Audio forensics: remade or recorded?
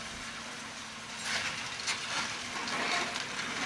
recorded